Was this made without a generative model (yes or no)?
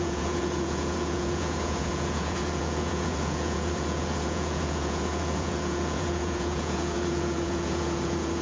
no